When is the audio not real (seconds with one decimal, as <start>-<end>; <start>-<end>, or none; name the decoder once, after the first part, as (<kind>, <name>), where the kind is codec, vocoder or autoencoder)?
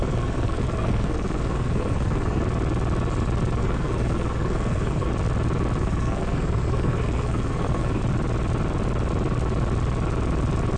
0.0-2.4 (codec, SNAC); 3.6-5.1; 5.8-8.0